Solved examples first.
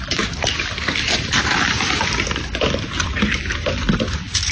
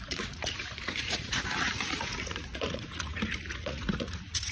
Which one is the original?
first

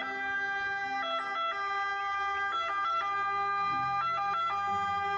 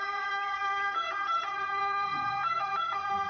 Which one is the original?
first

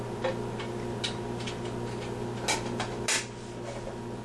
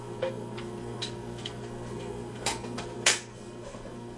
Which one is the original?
first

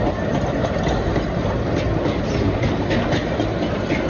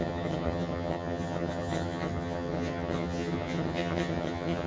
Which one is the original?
first